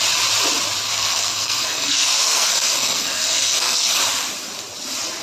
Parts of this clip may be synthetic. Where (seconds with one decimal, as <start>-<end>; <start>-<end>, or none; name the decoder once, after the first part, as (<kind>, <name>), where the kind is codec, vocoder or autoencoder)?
0.9-4.0 (codec, SNAC)